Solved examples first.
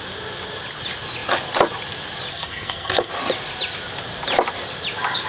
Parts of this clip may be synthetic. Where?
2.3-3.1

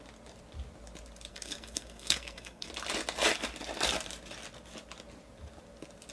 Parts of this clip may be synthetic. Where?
1.3-2.7

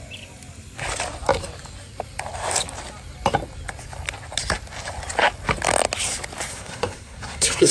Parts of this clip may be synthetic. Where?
6.5-7.7

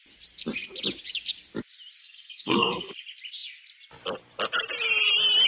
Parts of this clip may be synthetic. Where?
2.0-2.9